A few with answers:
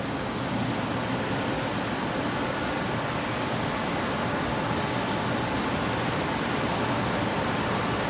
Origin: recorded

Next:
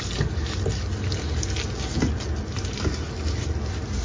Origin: recorded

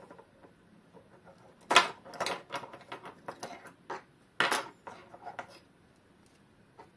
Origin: recorded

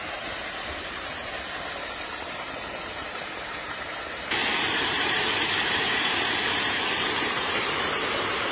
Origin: remade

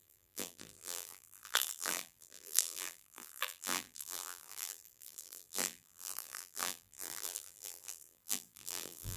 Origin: remade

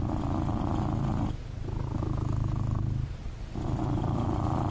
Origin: recorded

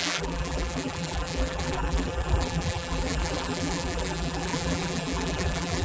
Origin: remade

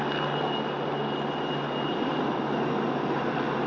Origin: recorded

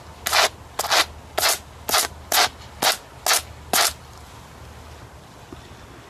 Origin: recorded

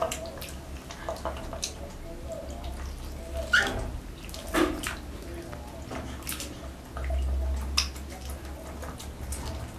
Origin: recorded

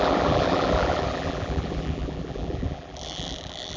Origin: remade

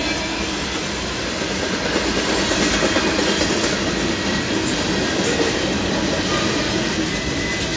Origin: recorded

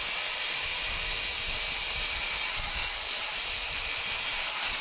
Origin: remade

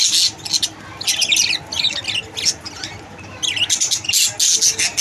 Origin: recorded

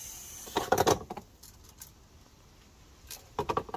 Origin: recorded